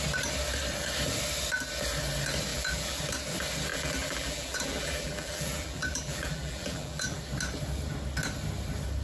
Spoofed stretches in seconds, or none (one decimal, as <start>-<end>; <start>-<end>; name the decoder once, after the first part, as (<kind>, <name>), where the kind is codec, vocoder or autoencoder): 2.5-3.0 (vocoder, BigVGAN v2); 3.7-7.2